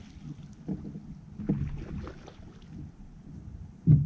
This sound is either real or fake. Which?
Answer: real